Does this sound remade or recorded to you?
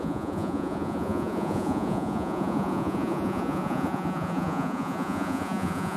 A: remade